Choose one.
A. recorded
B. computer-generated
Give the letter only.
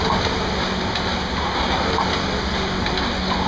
A